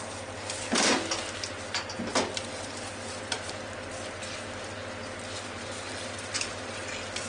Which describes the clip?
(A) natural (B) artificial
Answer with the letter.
A